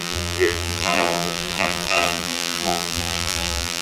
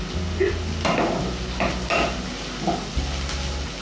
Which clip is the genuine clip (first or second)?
second